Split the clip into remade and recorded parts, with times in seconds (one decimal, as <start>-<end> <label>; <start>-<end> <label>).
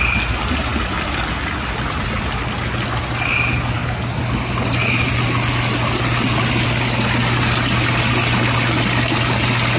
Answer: 0.0-9.8 recorded